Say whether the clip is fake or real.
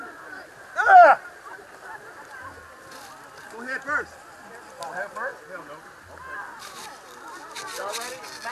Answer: real